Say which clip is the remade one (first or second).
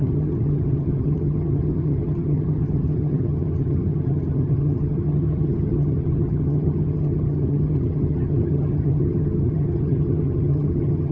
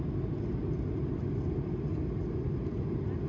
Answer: first